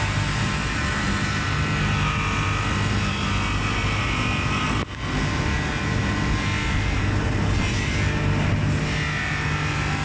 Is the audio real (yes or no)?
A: yes